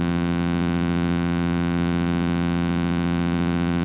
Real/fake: fake